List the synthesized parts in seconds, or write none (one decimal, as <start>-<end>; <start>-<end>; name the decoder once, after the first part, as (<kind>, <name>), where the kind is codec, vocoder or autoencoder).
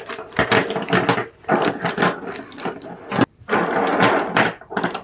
none